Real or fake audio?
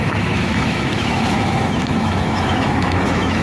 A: fake